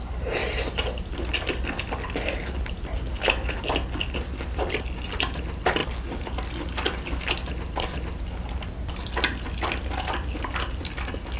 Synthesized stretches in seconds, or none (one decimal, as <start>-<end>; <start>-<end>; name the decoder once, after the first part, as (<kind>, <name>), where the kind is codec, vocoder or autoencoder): none